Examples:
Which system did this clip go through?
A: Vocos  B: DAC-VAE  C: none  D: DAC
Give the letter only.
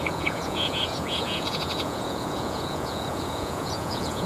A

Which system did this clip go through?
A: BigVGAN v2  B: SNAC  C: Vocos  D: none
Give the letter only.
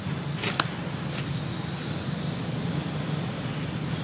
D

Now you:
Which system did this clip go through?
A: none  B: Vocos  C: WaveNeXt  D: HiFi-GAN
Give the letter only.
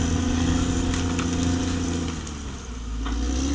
A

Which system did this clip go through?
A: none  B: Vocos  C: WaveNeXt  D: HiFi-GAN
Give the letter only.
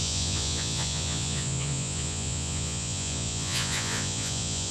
B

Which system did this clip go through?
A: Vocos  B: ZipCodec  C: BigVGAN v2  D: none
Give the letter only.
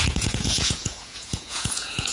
A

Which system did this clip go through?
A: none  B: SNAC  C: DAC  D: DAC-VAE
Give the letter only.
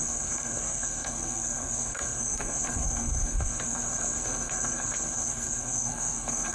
B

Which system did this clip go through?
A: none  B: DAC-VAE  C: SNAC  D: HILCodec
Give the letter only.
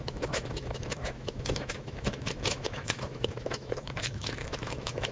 B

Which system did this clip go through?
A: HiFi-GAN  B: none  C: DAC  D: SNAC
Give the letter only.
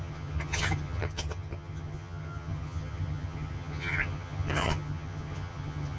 A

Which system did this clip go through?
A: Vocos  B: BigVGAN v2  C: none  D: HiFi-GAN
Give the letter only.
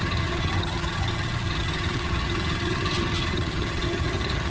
D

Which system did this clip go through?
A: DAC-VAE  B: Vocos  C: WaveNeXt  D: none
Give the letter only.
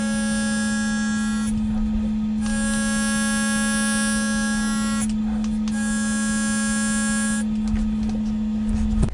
D